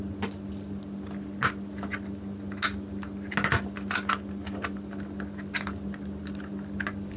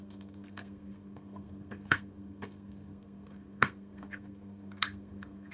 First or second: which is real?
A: first